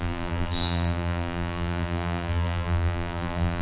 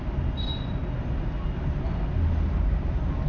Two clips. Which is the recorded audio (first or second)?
second